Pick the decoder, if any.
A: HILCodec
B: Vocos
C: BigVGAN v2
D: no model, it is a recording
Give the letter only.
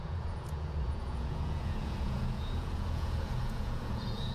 B